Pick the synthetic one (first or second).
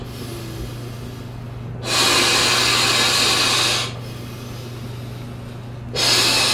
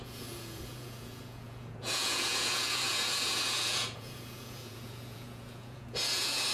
second